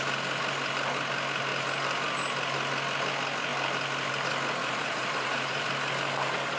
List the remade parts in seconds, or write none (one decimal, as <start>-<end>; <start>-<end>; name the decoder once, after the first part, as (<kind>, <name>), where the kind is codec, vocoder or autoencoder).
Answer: 4.6-5.7 (vocoder, Vocos)